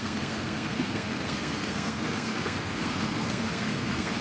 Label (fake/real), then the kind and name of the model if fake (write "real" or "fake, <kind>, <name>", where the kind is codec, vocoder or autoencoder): fake, codec, SNAC